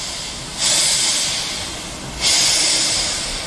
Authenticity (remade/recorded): recorded